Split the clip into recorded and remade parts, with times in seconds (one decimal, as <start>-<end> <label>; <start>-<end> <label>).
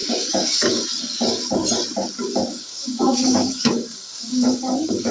0.0-0.8 remade; 0.8-2.5 recorded; 2.5-5.1 remade